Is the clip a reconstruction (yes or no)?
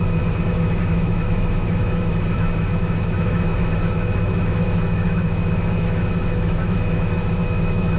yes